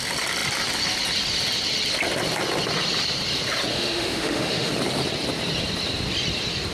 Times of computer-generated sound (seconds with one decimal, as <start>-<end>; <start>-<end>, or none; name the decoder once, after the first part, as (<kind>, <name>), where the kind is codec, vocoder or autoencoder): 3.7-4.7 (autoencoder, DAC-VAE)